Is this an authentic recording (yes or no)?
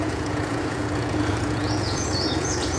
no